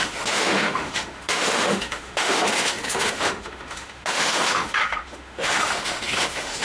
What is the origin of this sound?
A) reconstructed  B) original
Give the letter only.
A